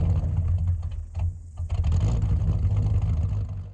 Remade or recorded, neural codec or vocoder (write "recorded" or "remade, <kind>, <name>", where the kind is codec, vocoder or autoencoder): recorded